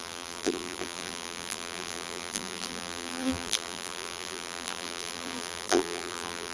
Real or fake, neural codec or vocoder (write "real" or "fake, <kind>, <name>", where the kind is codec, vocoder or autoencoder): fake, vocoder, BigVGAN v2